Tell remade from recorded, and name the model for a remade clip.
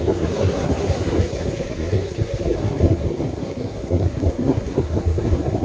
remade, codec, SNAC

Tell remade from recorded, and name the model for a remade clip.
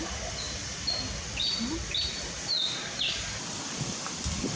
recorded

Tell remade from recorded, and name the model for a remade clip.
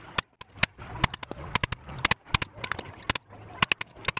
recorded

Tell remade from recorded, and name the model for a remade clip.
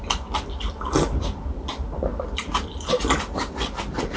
remade, vocoder, BigVGAN v2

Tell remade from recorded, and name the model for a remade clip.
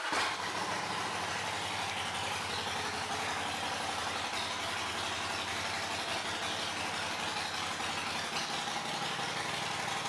recorded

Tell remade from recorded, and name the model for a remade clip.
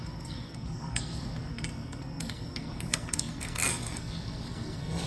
remade, codec, SNAC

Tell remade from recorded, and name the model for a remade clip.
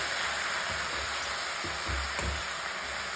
recorded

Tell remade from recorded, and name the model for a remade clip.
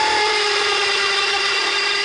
remade, vocoder, BigVGAN v2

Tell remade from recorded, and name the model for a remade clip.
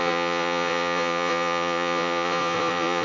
remade, vocoder, Vocos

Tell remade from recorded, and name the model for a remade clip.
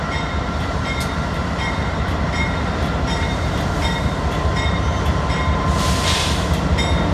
remade, vocoder, BigVGAN v2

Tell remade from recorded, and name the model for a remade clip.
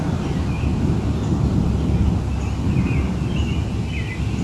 recorded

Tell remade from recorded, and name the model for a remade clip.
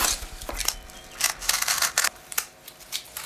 recorded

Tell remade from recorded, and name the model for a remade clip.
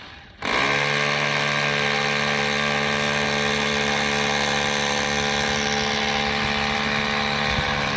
recorded